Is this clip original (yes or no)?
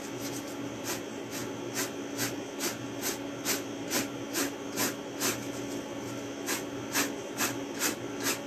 yes